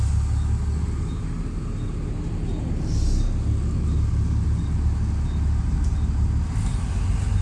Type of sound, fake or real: real